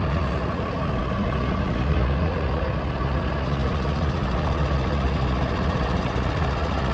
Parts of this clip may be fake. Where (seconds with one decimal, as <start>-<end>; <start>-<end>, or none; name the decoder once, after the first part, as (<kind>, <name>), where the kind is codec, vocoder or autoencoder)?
0.0-6.9 (vocoder, Vocos)